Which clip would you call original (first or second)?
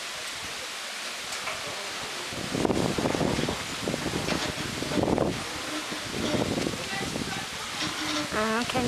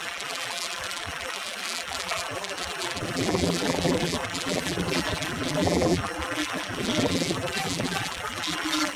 first